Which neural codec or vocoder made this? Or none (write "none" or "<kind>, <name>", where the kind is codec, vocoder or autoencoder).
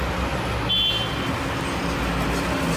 none